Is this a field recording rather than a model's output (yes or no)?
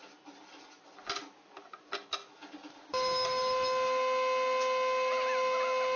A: yes